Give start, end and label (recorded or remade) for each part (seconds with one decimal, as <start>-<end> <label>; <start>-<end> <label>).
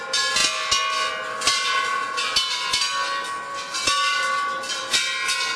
0.0-1.5 recorded; 1.5-2.2 remade; 2.2-5.6 recorded